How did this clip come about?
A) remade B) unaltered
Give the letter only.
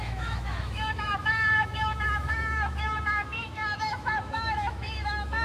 A